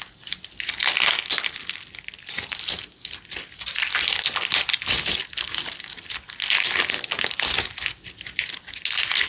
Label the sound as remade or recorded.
recorded